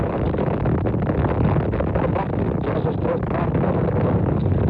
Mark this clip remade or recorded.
recorded